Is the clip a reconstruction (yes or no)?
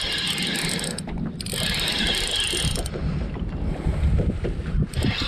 no